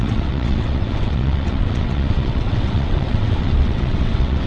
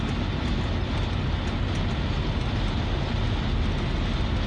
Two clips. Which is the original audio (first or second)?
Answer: second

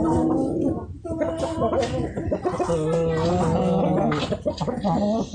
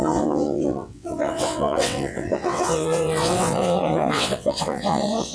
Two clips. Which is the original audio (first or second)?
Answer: first